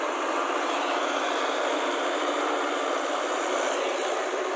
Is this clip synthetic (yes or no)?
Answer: no